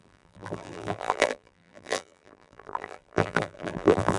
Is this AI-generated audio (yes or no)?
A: yes